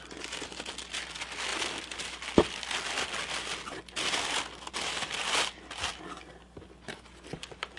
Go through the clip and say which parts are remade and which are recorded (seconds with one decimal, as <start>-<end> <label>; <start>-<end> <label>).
0.0-7.8 recorded